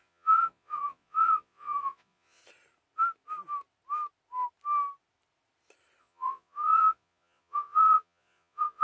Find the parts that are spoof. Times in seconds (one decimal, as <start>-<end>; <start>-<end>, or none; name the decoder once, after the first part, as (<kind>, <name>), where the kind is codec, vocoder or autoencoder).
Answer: 0.0-2.4 (vocoder, Vocos); 6.0-8.8